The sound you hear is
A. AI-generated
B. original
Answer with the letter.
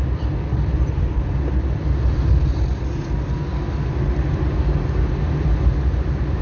B